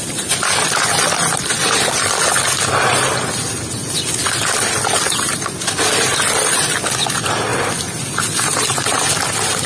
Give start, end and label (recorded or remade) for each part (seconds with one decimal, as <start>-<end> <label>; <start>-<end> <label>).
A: 0.0-9.7 recorded